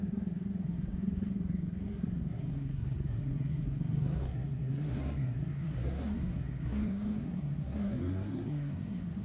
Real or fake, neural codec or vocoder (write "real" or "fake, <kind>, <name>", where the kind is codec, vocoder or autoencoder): fake, codec, SNAC